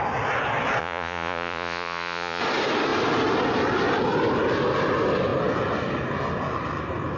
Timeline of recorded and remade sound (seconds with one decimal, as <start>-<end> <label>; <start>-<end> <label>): 0.0-0.8 recorded; 0.8-2.4 remade; 2.4-7.2 recorded